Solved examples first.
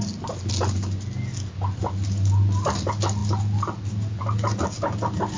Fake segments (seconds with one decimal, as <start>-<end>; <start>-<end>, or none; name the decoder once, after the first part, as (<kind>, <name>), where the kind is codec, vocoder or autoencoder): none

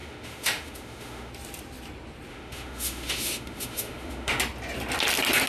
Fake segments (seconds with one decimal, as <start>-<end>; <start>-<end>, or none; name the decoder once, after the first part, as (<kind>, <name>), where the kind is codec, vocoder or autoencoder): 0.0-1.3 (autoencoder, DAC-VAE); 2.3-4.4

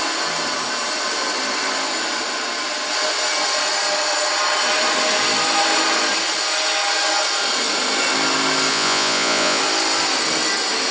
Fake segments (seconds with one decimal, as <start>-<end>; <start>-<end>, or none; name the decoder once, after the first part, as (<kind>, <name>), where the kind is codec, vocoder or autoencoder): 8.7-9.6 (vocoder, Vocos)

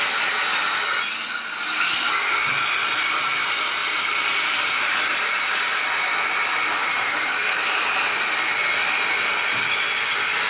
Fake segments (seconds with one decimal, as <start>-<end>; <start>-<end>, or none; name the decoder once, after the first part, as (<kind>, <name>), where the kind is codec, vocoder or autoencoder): 3.8-5.9 (vocoder, BigVGAN v2); 6.8-8.2

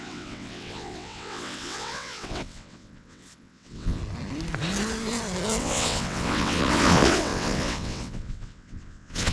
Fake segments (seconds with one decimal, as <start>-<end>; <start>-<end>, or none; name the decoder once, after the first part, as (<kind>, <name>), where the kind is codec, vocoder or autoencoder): 0.0-4.0 (vocoder, WaveNeXt); 5.6-9.3

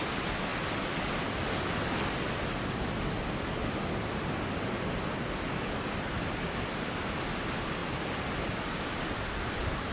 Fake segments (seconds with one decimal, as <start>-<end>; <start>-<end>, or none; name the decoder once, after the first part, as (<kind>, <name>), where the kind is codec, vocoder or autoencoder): none